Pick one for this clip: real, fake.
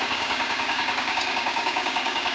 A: fake